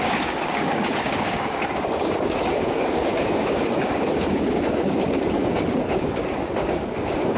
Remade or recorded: remade